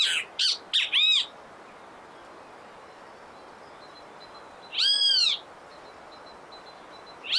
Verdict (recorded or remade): recorded